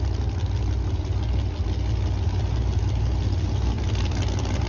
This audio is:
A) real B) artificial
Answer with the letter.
A